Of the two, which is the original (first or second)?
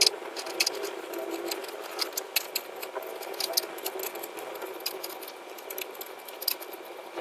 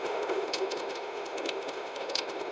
first